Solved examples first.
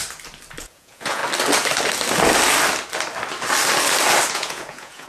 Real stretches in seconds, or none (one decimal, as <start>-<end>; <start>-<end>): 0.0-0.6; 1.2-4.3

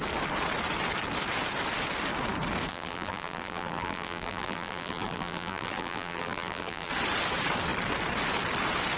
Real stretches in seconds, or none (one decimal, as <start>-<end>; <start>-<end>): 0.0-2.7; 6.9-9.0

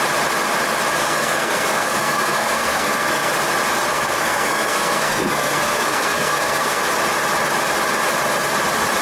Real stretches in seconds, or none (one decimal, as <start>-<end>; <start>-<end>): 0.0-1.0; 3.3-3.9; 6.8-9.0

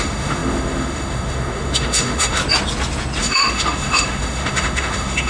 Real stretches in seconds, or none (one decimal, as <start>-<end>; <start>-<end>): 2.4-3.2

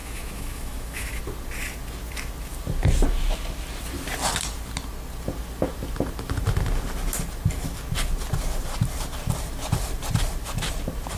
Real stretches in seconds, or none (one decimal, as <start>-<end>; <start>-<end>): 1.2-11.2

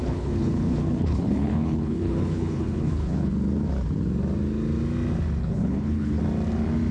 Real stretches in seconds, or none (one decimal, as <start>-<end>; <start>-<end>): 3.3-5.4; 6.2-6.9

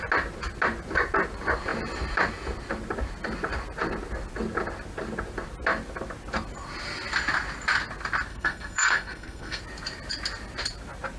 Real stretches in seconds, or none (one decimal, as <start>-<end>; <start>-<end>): 0.0-8.3; 9.6-11.2